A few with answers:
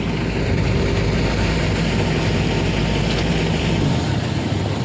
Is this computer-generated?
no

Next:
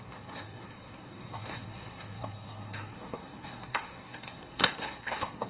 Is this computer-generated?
yes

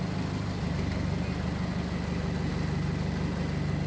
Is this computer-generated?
no